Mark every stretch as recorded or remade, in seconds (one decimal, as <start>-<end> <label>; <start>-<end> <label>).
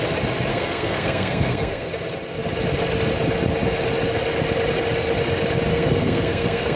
0.0-0.5 recorded; 0.5-1.9 remade; 1.9-5.7 recorded; 5.7-6.8 remade